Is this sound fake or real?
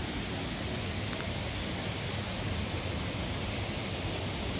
real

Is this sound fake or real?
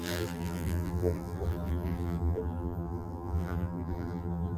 fake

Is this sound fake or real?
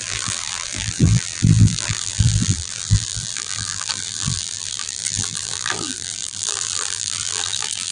fake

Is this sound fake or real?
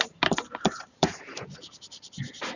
fake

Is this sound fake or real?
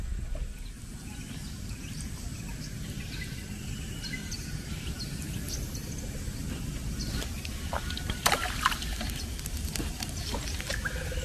real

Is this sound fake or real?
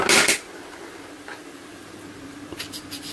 real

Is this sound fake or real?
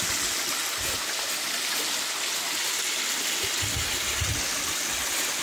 real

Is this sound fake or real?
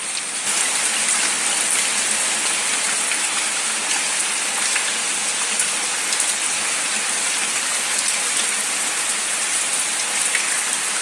real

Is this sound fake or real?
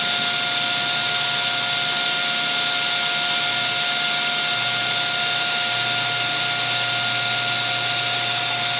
real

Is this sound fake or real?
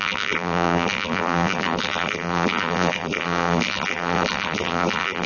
fake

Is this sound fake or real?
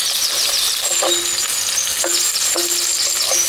real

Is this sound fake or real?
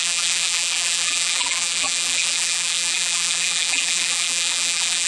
fake